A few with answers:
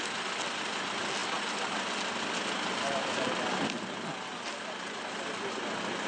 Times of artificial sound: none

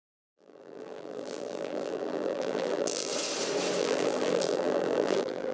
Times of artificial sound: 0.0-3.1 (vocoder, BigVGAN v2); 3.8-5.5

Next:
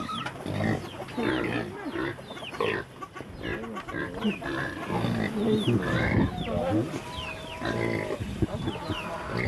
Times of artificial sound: none

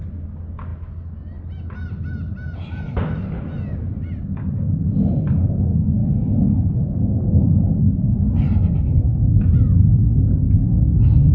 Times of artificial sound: none